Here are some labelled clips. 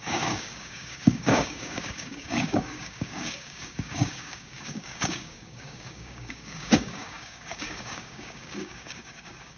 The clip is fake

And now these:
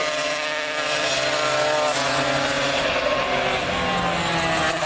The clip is real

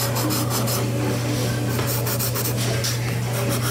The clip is real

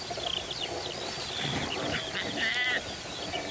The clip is real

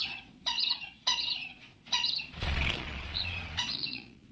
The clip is fake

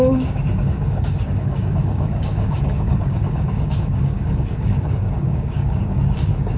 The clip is fake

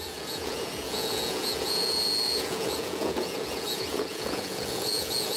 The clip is fake